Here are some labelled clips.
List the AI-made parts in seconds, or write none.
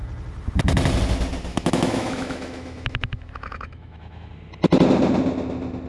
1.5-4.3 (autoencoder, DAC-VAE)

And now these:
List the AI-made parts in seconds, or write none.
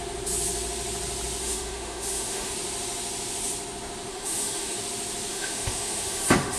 1.4-2.5 (autoencoder, DAC-VAE); 4.1-4.8; 5.3-6.6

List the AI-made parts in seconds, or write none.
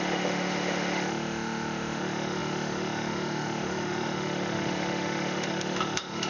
0.0-6.3 (autoencoder, DAC-VAE)